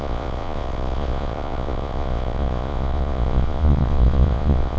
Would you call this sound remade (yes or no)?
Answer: yes